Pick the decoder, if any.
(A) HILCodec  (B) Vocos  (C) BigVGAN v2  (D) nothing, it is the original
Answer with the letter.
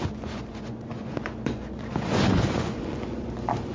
B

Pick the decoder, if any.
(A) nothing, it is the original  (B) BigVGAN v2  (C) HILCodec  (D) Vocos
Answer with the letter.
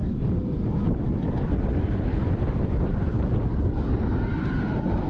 A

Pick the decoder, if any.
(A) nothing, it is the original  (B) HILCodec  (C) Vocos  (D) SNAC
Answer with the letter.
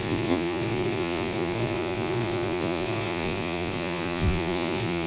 C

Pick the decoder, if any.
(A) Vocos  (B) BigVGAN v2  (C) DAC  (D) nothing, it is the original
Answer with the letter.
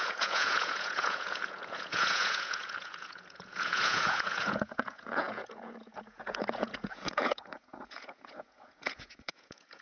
A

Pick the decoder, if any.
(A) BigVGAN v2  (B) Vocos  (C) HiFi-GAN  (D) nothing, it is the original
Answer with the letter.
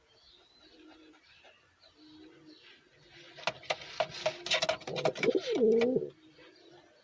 D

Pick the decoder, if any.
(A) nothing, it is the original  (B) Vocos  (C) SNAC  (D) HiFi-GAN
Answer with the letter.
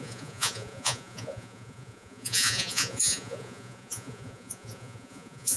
B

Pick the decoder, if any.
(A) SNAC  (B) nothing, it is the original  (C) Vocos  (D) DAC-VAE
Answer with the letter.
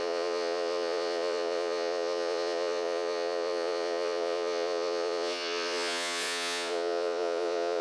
C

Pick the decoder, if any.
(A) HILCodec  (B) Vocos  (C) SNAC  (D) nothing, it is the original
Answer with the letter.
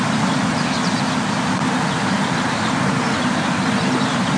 D